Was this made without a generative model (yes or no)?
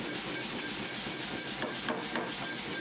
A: yes